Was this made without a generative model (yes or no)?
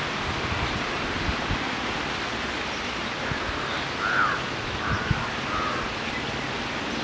yes